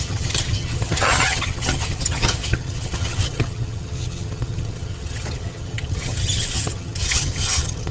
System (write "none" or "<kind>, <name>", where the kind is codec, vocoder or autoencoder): vocoder, HiFi-GAN